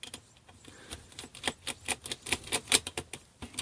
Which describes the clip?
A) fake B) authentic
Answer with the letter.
B